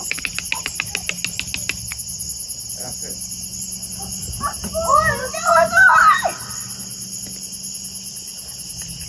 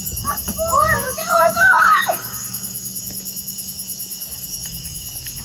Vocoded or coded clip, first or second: second